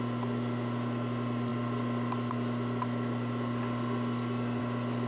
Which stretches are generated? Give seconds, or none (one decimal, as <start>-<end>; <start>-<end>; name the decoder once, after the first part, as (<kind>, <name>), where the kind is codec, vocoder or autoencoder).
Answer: none